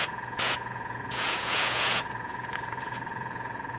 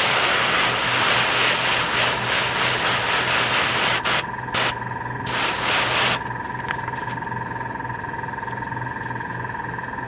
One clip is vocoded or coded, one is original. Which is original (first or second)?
second